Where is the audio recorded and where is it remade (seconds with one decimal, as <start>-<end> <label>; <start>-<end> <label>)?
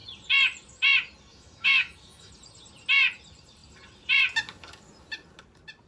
0.0-1.3 recorded; 1.3-2.3 remade; 2.3-5.9 recorded